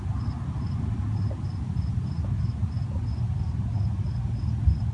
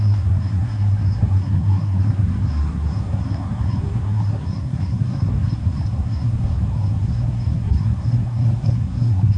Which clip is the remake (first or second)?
second